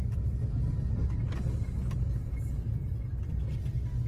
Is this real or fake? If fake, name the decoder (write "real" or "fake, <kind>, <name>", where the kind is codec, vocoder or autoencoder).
real